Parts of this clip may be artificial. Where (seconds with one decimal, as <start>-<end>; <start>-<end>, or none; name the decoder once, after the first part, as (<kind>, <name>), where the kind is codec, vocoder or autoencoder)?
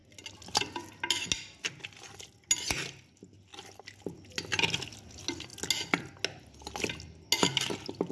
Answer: none